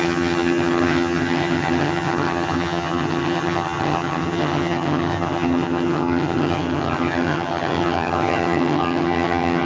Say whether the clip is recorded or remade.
remade